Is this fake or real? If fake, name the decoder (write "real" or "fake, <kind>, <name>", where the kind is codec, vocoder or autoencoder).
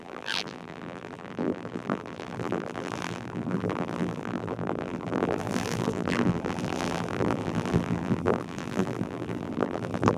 fake, vocoder, BigVGAN v2